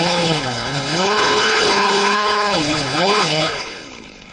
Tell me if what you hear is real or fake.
fake